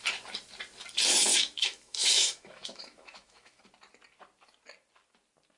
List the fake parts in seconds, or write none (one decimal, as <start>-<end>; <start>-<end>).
1.3-3.6